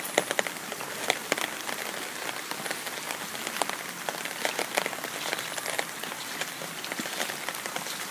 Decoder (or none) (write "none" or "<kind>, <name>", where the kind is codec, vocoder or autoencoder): none